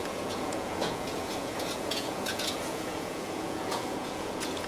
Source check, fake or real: fake